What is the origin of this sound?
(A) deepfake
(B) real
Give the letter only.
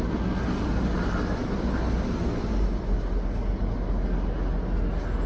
B